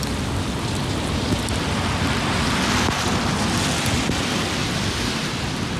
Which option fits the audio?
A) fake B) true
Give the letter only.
B